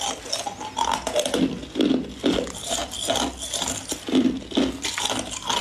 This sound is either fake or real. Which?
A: real